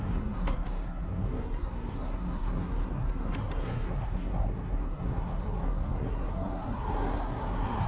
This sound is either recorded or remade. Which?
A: remade